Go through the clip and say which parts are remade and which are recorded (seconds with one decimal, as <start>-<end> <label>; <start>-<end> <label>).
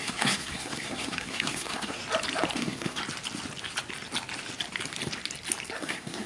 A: 0.0-2.0 remade; 2.0-2.5 recorded; 2.5-3.0 remade; 3.0-5.8 recorded; 5.8-6.3 remade